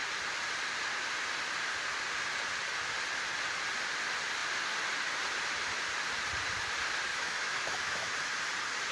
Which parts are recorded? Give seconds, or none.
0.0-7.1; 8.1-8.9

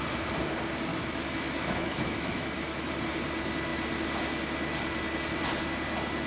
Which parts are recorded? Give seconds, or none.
0.0-0.9; 2.9-6.3

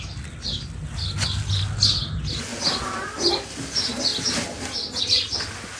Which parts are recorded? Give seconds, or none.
0.0-5.8

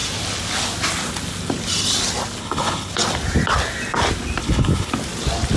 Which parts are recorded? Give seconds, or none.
0.0-2.4; 2.9-4.4; 4.9-5.6

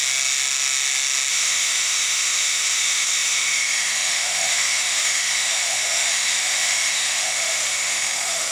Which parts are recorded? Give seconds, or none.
0.0-1.3